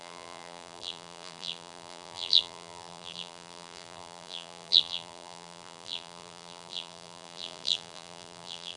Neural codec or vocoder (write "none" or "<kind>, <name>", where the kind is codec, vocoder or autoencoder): vocoder, BigVGAN v2